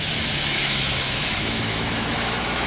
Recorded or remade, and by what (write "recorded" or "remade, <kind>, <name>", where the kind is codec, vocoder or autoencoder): remade, autoencoder, DAC-VAE